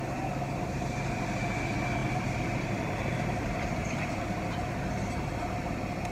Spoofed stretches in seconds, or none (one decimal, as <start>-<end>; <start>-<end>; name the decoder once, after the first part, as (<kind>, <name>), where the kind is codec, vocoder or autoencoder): 2.0-4.1 (vocoder, BigVGAN v2)